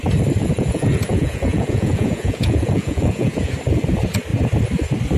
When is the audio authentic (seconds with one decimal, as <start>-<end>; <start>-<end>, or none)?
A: 0.0-0.4; 3.5-5.2